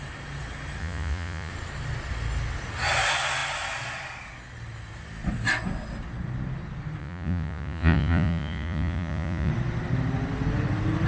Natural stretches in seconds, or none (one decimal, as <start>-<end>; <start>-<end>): 0.0-0.8; 1.5-7.0; 9.5-11.1